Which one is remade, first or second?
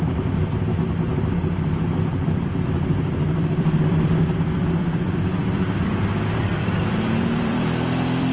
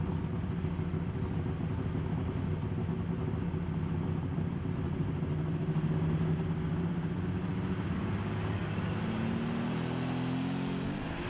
first